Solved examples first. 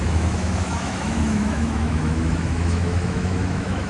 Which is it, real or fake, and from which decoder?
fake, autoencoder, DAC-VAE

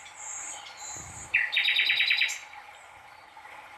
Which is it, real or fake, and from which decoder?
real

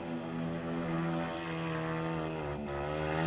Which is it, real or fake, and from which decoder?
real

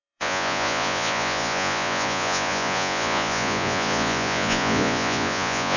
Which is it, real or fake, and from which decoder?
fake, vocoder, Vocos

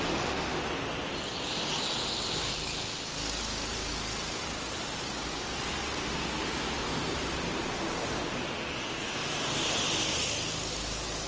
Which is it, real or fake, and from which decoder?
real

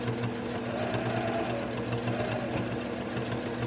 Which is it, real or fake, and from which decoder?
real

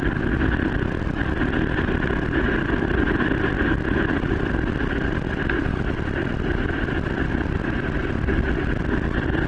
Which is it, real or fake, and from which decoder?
fake, vocoder, BigVGAN v2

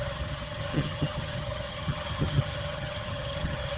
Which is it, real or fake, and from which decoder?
fake, vocoder, HiFi-GAN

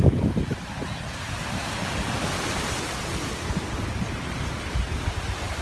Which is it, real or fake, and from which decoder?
real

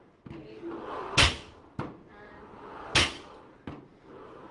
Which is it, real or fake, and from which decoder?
real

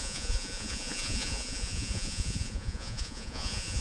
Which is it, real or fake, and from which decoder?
fake, vocoder, Vocos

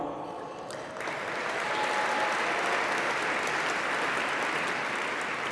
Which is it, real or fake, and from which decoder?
real